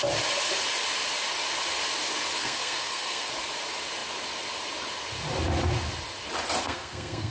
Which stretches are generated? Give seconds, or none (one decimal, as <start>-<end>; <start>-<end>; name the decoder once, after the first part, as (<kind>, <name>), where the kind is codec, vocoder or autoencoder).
2.4-3.3 (codec, SNAC); 6.6-7.3